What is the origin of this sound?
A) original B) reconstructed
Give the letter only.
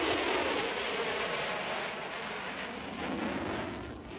A